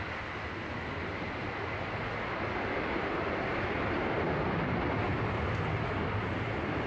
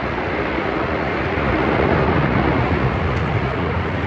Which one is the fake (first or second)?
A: second